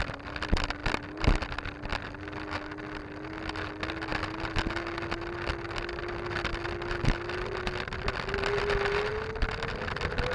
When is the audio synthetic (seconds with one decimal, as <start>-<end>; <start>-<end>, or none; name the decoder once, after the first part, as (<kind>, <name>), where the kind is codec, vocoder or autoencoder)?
none